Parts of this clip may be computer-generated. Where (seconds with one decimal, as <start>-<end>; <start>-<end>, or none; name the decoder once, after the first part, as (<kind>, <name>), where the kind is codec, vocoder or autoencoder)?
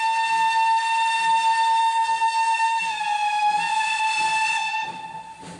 1.8-3.0 (codec, SNAC)